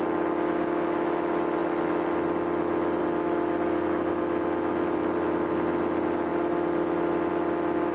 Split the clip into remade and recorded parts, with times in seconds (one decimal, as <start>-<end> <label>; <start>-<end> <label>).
0.0-7.9 recorded